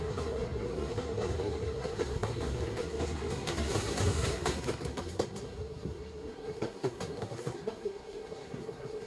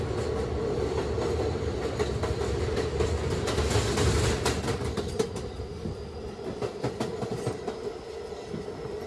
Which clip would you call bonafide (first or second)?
second